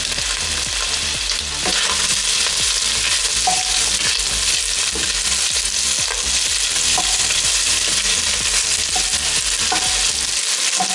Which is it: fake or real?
real